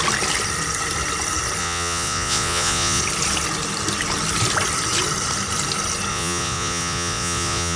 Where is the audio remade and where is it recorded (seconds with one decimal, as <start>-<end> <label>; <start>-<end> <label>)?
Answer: 0.0-1.6 recorded; 1.6-3.0 remade; 3.0-6.1 recorded; 6.1-7.8 remade